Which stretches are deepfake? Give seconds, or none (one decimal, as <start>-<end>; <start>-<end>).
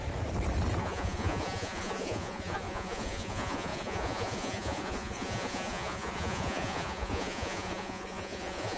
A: 0.8-8.8